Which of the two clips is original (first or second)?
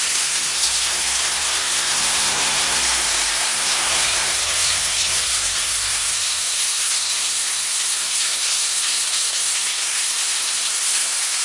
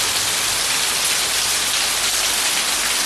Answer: second